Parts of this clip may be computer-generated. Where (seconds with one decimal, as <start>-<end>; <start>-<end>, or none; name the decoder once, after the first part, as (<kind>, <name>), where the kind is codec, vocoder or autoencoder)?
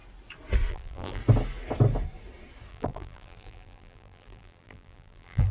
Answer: 0.7-1.2 (vocoder, BigVGAN v2); 2.7-5.5